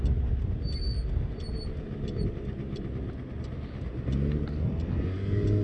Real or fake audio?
real